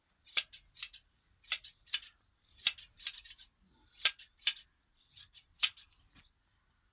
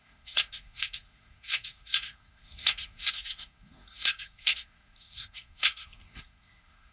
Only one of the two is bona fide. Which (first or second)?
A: first